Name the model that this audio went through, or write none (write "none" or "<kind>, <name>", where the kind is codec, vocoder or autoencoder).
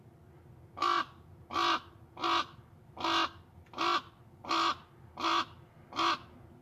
none